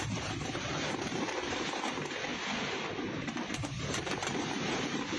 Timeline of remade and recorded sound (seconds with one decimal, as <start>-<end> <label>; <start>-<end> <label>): 0.0-2.3 remade; 2.3-2.9 recorded; 2.9-5.2 remade